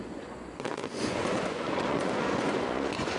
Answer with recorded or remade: remade